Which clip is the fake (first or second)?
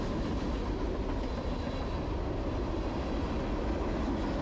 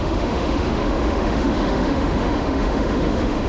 second